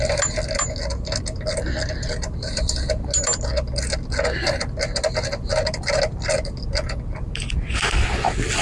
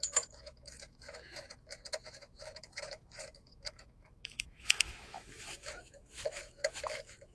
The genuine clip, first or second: first